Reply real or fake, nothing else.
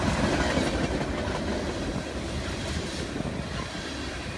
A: real